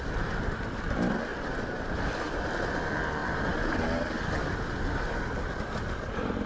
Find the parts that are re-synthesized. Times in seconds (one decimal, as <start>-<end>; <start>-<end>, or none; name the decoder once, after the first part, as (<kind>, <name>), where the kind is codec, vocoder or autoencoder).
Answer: 1.3-2.1 (vocoder, BigVGAN v2); 3.2-3.9